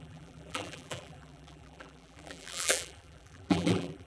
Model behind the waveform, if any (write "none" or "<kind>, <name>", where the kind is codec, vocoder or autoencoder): vocoder, BigVGAN v2